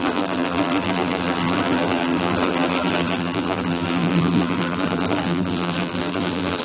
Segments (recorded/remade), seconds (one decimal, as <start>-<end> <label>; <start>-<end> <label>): 0.0-6.6 remade